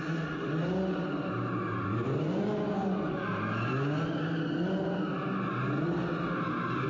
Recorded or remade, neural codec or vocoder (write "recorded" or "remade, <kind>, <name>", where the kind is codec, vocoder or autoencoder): recorded